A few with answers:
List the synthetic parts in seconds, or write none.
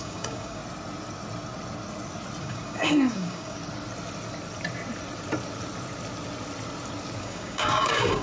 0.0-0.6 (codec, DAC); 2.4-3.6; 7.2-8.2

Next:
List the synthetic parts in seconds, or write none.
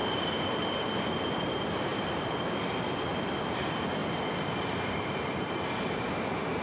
0.0-3.1 (vocoder, BigVGAN v2); 3.6-6.6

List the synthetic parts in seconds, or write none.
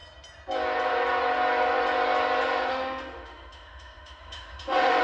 2.7-5.0 (autoencoder, DAC-VAE)